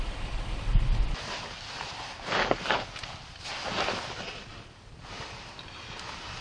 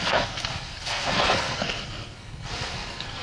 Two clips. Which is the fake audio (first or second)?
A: second